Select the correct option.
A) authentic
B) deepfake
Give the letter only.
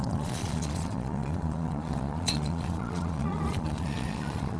B